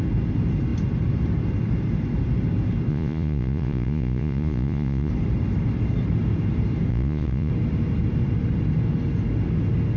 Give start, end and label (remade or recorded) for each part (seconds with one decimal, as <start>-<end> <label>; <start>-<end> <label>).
0.0-2.9 recorded; 2.9-5.1 remade; 5.1-6.9 recorded; 6.9-7.5 remade; 7.5-10.0 recorded